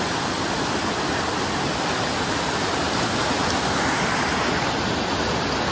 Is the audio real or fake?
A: real